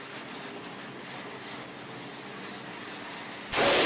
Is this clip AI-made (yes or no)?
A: no